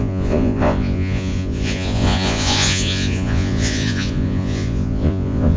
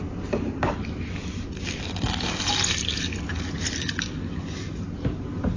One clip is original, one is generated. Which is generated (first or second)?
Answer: first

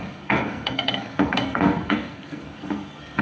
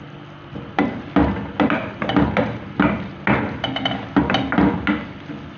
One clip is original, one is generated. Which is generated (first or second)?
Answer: first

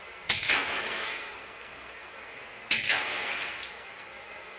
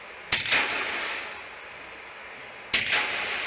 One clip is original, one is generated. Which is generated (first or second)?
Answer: first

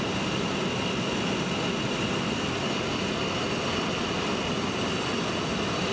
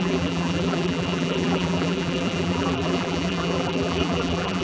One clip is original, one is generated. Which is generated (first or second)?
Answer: second